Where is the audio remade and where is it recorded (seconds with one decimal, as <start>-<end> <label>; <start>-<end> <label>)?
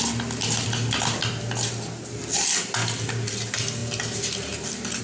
0.0-5.0 recorded